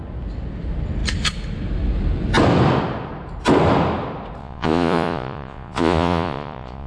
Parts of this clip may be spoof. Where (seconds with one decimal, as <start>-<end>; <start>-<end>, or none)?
4.4-6.9

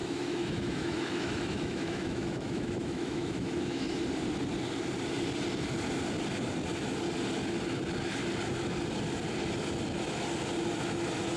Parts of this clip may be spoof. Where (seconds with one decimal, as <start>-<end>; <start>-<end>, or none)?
0.0-4.0

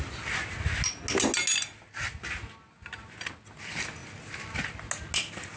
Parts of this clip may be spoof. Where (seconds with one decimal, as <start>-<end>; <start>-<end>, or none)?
none